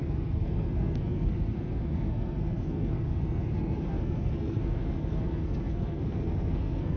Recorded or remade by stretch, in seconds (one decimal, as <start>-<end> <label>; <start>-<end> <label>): 0.0-7.0 remade